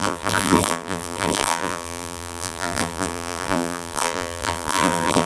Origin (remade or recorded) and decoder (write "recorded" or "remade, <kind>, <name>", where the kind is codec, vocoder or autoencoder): remade, vocoder, BigVGAN v2